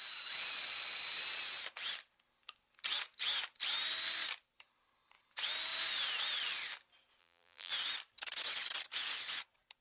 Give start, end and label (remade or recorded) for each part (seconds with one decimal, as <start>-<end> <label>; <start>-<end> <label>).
0.0-7.2 recorded; 7.2-7.7 remade; 7.7-9.8 recorded

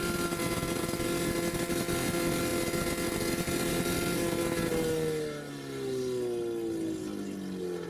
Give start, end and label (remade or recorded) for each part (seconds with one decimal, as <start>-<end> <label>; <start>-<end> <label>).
0.0-7.9 recorded

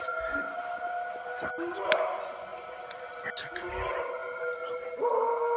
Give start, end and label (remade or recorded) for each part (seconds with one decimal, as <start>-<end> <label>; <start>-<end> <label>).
0.0-5.6 recorded

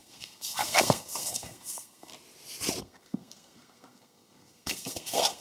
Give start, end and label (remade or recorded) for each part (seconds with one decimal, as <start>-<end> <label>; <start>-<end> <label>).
0.0-2.1 remade; 2.1-2.8 recorded; 2.8-5.4 remade

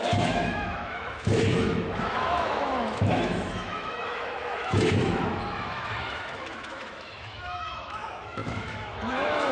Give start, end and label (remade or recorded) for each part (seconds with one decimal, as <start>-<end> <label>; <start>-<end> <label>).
0.0-9.5 remade